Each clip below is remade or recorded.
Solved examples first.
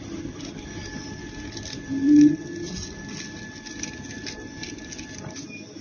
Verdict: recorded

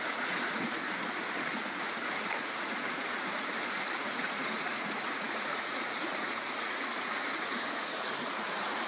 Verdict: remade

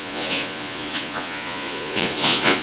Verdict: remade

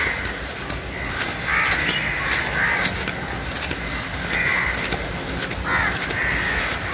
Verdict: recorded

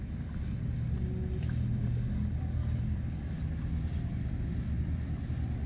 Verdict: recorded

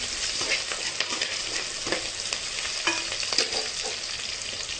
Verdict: recorded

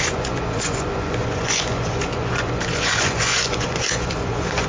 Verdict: remade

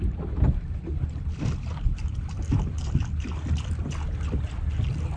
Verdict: recorded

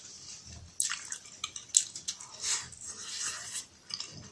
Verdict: recorded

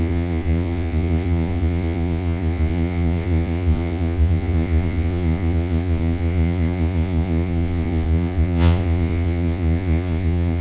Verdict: remade